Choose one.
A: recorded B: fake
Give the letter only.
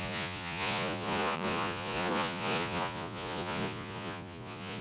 B